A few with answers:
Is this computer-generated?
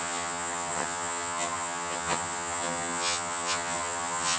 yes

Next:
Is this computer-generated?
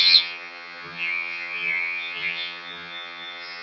yes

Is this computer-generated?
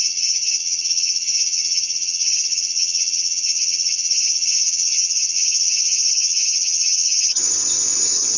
yes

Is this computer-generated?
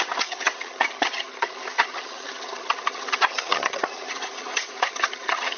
yes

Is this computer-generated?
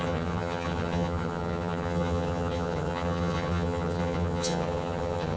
yes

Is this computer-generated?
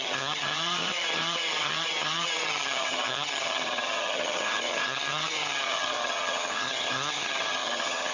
yes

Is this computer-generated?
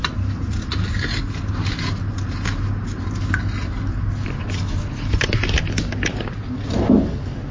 no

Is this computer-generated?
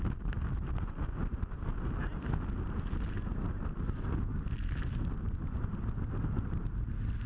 no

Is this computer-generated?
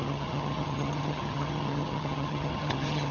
yes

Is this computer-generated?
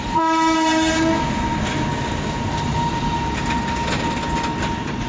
no